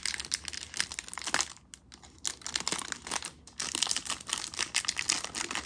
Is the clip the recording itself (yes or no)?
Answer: yes